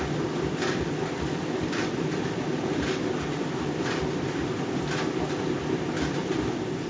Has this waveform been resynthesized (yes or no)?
no